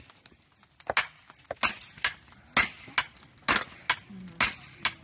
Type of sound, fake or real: real